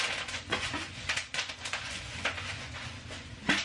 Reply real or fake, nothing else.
fake